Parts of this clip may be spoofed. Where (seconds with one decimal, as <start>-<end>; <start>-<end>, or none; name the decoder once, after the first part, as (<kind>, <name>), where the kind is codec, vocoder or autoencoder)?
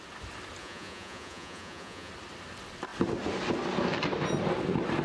0.6-2.1 (vocoder, Vocos)